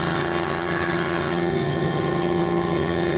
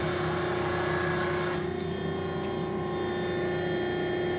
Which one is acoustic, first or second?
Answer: second